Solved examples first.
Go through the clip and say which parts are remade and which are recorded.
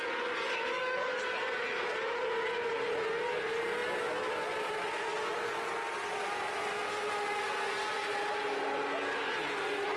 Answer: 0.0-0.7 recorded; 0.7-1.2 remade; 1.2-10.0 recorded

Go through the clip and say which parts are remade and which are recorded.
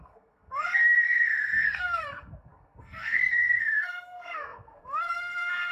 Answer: 0.0-5.7 remade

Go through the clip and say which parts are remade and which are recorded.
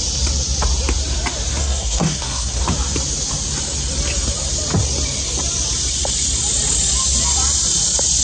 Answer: 0.0-1.6 recorded; 1.6-2.6 remade; 2.6-8.2 recorded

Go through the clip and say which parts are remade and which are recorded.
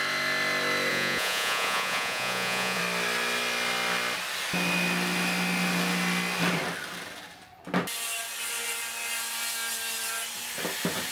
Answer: 0.0-0.9 recorded; 0.9-2.8 remade; 2.8-11.1 recorded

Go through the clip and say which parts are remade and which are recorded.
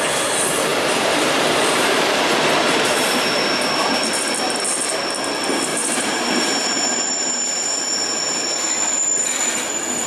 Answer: 0.0-0.7 recorded; 0.7-3.7 remade; 3.7-5.7 recorded; 5.7-8.7 remade; 8.7-10.1 recorded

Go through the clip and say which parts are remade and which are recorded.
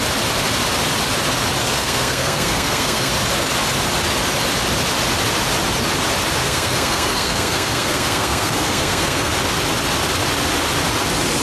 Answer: 0.0-1.6 recorded; 1.6-3.1 remade; 3.1-6.4 recorded; 6.4-9.3 remade; 9.3-11.4 recorded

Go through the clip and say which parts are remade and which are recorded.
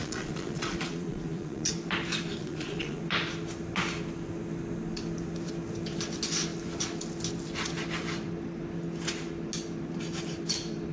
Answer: 0.0-1.7 remade; 1.7-2.4 recorded; 2.4-3.0 remade; 3.0-10.9 recorded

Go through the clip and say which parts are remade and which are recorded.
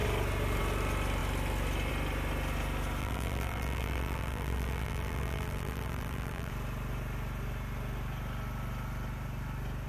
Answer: 0.0-3.0 recorded; 3.0-6.5 remade; 6.5-9.9 recorded